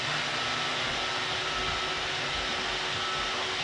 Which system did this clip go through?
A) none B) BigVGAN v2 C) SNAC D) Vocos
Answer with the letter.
A